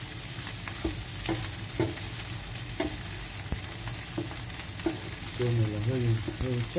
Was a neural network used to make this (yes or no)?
no